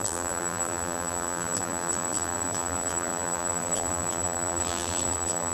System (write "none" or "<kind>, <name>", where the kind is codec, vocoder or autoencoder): vocoder, BigVGAN v2